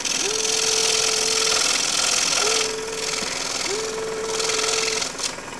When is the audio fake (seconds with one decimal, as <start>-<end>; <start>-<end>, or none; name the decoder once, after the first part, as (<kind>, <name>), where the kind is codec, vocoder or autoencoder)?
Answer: none